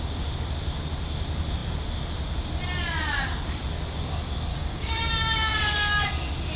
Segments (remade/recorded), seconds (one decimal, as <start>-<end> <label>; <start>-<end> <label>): 0.0-4.5 recorded; 4.5-6.1 remade; 6.1-6.6 recorded